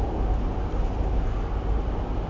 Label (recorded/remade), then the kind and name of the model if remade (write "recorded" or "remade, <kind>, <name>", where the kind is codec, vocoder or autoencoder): recorded